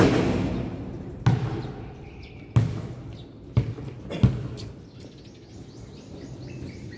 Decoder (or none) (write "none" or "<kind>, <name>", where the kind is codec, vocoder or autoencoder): none